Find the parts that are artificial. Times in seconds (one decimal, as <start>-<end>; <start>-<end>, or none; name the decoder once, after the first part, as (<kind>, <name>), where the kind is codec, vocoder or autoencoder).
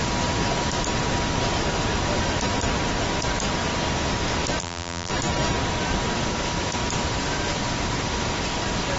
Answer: 4.6-5.1 (vocoder, BigVGAN v2)